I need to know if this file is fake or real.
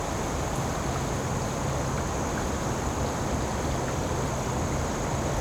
real